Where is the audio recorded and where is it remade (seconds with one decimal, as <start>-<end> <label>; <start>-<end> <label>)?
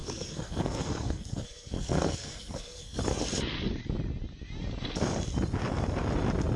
0.0-3.0 remade; 3.0-6.6 recorded